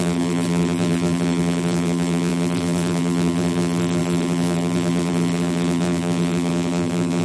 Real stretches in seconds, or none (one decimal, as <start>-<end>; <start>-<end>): none